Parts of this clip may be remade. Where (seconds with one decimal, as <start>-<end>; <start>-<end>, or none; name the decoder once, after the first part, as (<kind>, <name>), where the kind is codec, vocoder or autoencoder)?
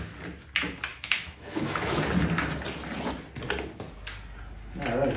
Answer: 0.9-2.0 (autoencoder, DAC-VAE)